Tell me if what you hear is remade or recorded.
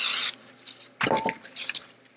recorded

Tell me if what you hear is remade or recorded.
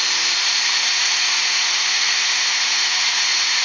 remade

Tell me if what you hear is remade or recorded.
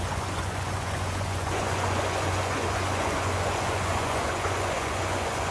remade